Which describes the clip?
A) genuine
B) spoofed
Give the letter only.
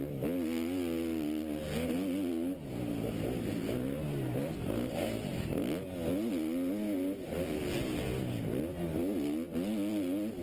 A